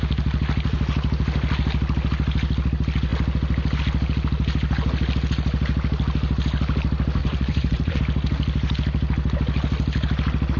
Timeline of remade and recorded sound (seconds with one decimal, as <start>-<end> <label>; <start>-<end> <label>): 0.0-7.2 recorded; 7.2-8.0 remade; 8.0-10.6 recorded